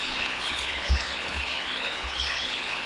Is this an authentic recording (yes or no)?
no